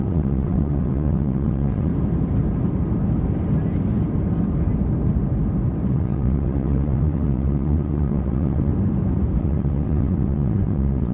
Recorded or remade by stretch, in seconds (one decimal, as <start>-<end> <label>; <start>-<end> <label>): 0.0-1.9 remade; 1.9-5.9 recorded; 5.9-8.7 remade; 8.7-9.4 recorded; 9.4-11.1 remade